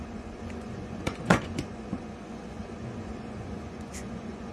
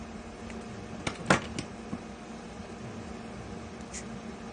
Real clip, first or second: second